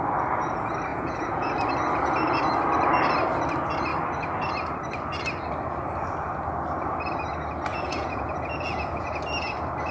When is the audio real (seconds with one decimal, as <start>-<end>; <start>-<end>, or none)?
0.0-0.9; 1.5-7.7; 9.2-9.9